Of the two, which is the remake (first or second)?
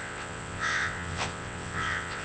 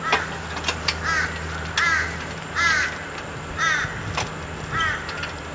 first